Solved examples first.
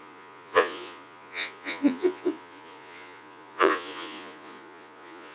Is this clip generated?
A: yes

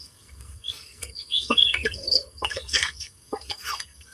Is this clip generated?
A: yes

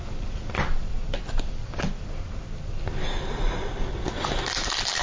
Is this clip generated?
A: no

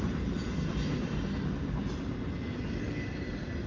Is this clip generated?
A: no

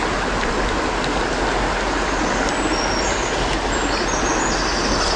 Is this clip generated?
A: no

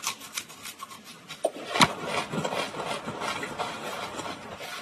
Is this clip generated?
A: no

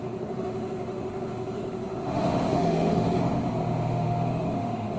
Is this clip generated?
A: yes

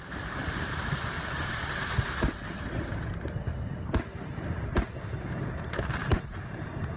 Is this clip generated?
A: yes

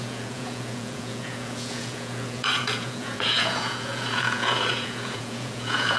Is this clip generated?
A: yes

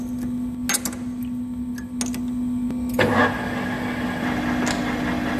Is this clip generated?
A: no